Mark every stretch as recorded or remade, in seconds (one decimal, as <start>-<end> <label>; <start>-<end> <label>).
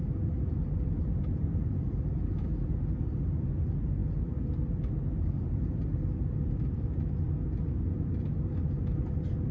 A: 0.0-9.5 recorded